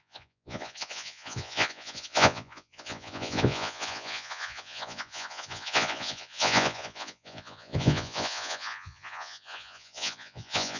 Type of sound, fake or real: fake